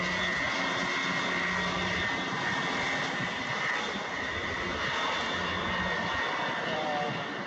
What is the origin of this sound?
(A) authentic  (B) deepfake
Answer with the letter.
A